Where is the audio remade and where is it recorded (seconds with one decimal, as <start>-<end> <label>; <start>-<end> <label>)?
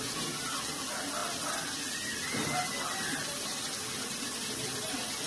0.0-5.3 recorded